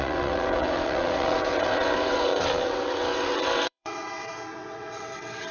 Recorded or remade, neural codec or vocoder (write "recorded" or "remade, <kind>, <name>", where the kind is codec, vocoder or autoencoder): remade, vocoder, WaveNeXt